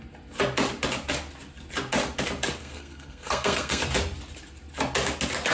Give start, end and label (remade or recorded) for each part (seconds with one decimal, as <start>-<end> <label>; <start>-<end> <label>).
0.0-2.6 recorded; 2.6-3.8 remade; 3.8-5.5 recorded